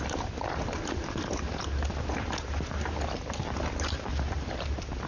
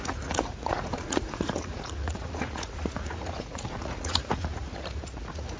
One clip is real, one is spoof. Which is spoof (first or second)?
second